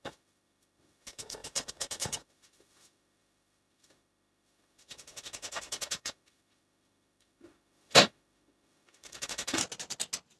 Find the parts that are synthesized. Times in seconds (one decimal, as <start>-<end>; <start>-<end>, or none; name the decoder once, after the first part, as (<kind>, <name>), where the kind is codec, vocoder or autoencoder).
0.0-9.6 (autoencoder, DAC-VAE)